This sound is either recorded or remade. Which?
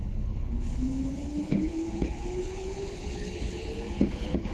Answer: remade